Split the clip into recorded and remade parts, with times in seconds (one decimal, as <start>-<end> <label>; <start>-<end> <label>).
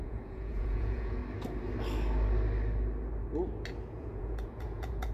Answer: 0.0-1.2 remade; 1.2-4.0 recorded; 4.0-5.1 remade